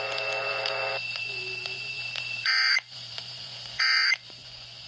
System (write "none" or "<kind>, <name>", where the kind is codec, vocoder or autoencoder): vocoder, Vocos